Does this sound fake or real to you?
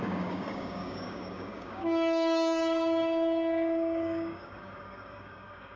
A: fake